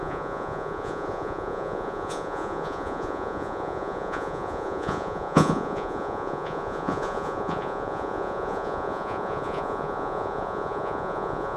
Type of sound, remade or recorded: remade